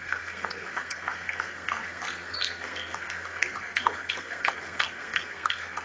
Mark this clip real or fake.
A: fake